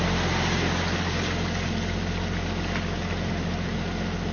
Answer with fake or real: real